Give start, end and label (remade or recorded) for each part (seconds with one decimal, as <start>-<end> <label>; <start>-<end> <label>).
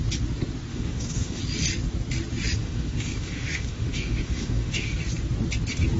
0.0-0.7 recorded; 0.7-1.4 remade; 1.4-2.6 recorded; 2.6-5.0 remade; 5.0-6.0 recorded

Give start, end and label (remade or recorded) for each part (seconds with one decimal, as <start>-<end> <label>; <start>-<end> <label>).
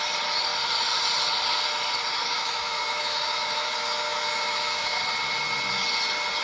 0.0-2.2 recorded; 2.2-5.0 remade; 5.0-6.4 recorded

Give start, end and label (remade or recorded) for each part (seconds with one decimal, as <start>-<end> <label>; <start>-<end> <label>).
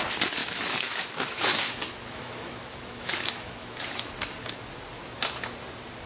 0.0-0.4 recorded; 0.4-4.1 remade; 4.1-6.1 recorded